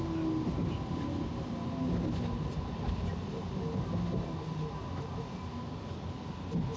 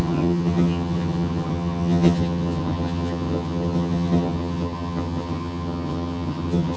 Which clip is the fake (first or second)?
second